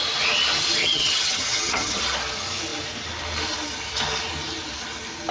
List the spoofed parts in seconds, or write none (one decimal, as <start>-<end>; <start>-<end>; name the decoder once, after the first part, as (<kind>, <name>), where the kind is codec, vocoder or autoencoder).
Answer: 0.8-2.0 (vocoder, HiFi-GAN)